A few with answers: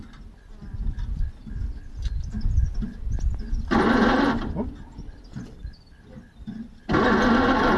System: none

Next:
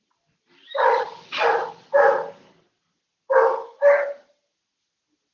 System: none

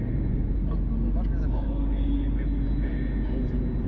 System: none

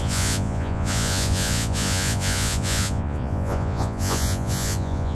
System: vocoder, Vocos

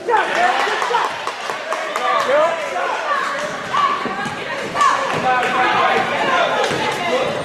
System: none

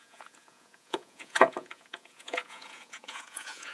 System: vocoder, Vocos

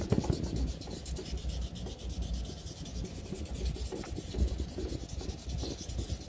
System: none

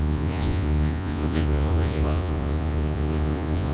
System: vocoder, Vocos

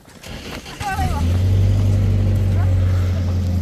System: none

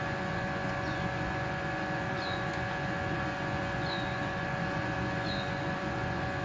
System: vocoder, Vocos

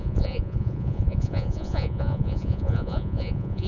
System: vocoder, Vocos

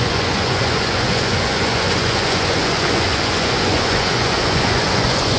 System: vocoder, Vocos